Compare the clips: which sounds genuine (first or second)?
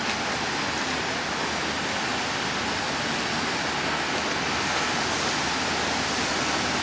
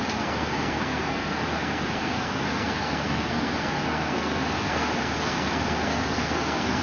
first